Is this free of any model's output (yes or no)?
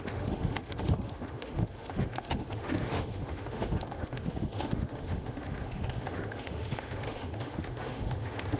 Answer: no